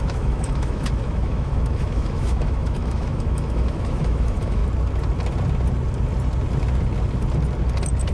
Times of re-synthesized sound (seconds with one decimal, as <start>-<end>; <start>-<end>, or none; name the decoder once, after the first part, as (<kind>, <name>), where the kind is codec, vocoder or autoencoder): 0.0-4.6 (autoencoder, DAC-VAE)